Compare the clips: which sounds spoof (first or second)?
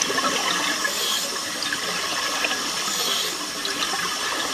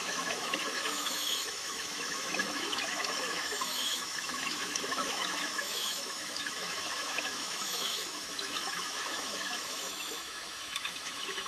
second